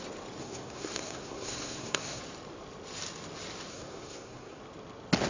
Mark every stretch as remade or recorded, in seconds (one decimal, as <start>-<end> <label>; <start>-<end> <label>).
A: 0.0-0.4 recorded; 0.4-2.2 remade; 2.2-3.7 recorded; 3.7-4.6 remade; 4.6-5.3 recorded